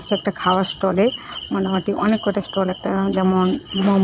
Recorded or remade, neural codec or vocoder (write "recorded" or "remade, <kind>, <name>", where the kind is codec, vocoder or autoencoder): remade, vocoder, Vocos